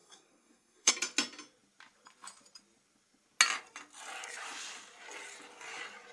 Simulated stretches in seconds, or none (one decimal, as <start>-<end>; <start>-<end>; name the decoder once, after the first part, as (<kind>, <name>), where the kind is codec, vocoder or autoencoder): 0.0-0.9 (codec, SNAC)

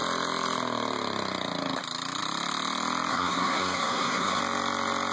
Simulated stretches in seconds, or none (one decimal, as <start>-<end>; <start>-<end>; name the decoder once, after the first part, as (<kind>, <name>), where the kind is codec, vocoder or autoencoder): 3.1-4.4 (codec, SNAC)

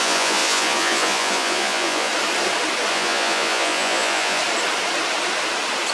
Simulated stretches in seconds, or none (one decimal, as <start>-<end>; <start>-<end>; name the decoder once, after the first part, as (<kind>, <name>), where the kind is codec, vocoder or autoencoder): 0.0-2.1 (vocoder, Vocos); 2.9-4.4

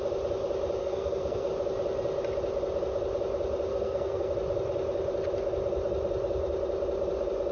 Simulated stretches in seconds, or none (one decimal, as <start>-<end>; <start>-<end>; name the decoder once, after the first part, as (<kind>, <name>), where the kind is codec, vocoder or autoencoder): 0.8-1.5 (codec, SNAC); 3.7-4.3

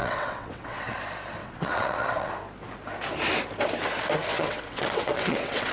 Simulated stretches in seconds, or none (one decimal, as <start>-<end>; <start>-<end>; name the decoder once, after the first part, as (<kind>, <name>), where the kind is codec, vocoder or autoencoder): 0.0-1.0 (vocoder, WaveNeXt); 1.4-2.3; 4.3-5.7

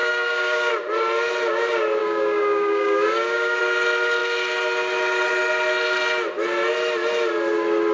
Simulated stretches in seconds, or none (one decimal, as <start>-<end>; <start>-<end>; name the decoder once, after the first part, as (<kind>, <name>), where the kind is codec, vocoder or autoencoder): 0.0-0.7 (codec, DAC); 2.0-3.6

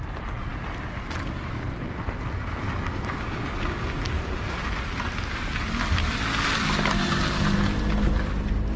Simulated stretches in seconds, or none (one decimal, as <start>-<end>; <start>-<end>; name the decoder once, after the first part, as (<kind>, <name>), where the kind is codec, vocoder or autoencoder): none

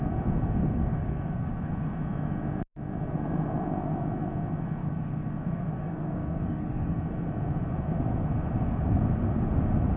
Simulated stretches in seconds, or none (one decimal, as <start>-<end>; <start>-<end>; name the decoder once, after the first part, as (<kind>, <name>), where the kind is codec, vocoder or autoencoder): 0.6-1.7 (codec, DAC); 4.8-7.0